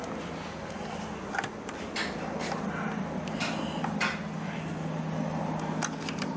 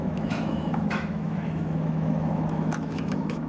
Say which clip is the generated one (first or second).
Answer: second